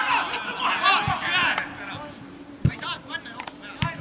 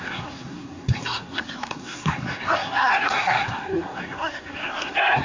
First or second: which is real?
first